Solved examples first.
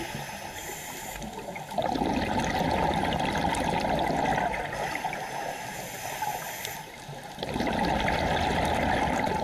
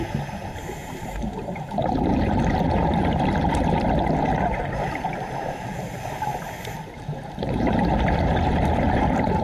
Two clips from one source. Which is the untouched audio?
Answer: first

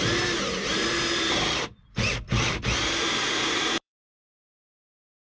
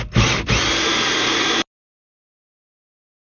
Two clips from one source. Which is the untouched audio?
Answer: second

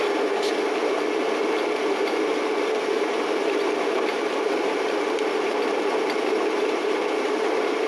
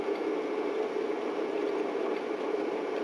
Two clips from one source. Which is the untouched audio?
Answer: second